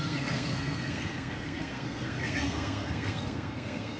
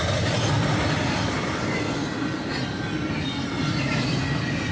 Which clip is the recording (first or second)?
second